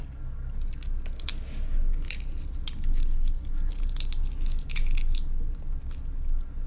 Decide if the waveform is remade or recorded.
recorded